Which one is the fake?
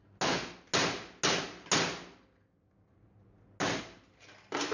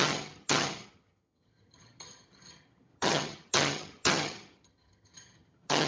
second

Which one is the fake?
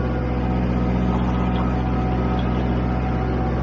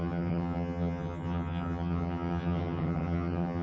second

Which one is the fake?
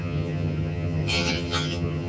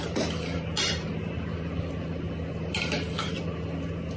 first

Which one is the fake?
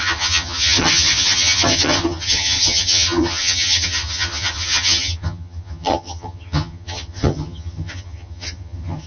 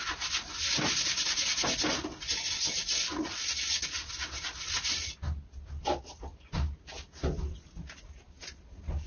first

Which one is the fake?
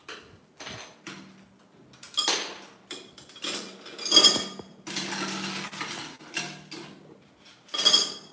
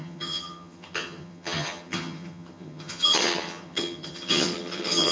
second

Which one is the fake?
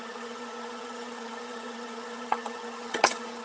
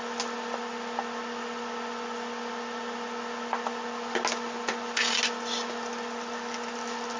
first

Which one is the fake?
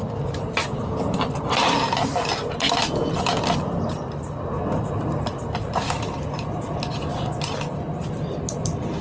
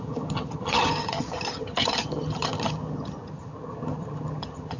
second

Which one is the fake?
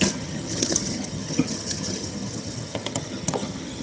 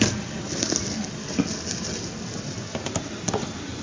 first